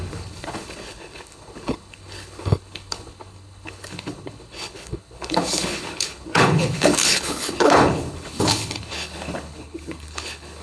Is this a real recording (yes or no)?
no